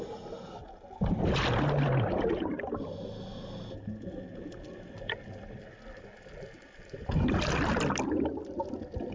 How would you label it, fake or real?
real